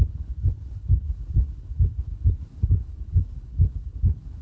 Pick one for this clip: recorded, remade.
remade